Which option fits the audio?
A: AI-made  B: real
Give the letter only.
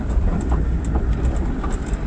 B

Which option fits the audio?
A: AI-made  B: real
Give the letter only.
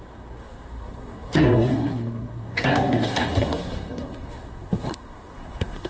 A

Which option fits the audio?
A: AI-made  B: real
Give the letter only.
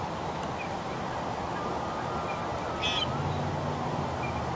B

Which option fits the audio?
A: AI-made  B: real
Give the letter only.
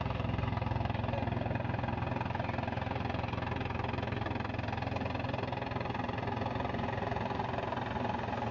B